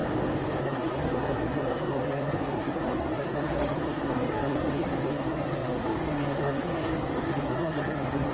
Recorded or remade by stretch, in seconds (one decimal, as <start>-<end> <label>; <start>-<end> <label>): 0.0-0.6 recorded; 0.6-8.3 remade